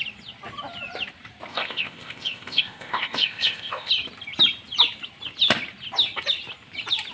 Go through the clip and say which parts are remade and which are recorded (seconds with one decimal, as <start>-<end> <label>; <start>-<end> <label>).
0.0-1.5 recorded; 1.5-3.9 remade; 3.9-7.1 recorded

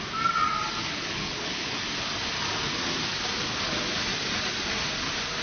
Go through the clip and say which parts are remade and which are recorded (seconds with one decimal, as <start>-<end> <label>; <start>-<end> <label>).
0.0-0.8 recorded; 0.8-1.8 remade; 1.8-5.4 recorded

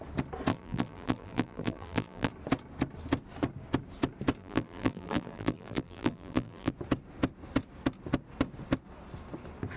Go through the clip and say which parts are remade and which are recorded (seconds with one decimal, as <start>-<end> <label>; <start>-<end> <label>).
0.0-0.5 recorded; 0.5-2.3 remade; 2.3-4.4 recorded; 4.4-6.7 remade; 6.7-9.8 recorded